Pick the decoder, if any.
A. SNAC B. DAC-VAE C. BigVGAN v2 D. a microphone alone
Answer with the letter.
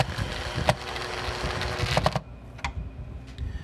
D